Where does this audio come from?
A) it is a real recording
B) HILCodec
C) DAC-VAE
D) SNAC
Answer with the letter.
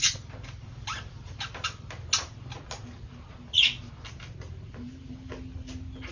A